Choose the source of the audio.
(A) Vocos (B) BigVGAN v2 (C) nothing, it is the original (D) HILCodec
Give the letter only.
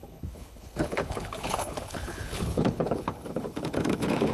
D